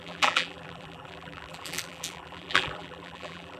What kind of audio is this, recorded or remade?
remade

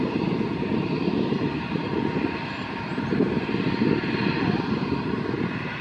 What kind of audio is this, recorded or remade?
remade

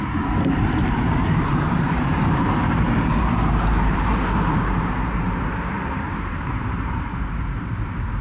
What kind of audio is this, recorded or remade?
remade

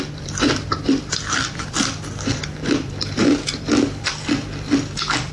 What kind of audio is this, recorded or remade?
remade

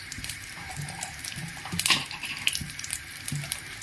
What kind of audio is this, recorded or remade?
remade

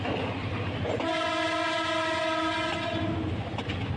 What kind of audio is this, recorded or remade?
recorded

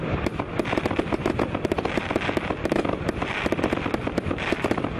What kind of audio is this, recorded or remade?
recorded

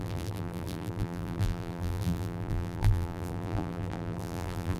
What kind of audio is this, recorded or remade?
remade